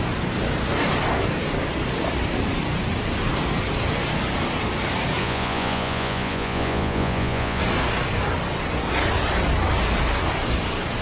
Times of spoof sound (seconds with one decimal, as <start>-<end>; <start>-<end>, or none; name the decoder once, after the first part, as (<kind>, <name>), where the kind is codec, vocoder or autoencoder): 5.2-7.6 (vocoder, Vocos)